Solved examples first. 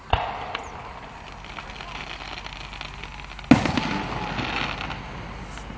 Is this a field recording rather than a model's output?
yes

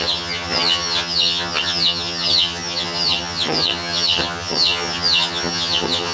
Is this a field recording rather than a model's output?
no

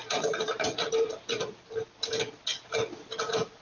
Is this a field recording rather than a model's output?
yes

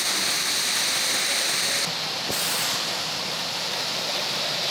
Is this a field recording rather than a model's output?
yes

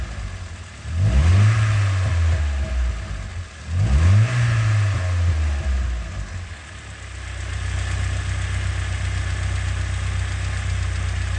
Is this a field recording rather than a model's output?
yes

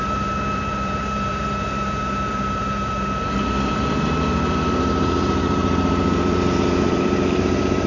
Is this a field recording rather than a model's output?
no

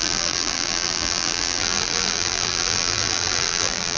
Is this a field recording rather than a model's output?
no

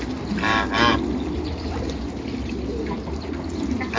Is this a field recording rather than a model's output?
yes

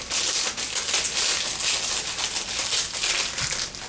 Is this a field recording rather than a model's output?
yes